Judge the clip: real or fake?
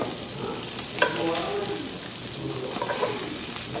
real